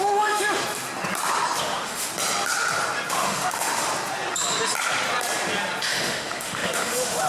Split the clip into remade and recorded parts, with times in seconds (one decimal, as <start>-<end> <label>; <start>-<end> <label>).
0.0-0.6 remade; 0.6-1.6 recorded; 1.6-2.1 remade; 2.1-3.1 recorded; 3.1-3.9 remade; 3.9-5.8 recorded; 5.8-7.3 remade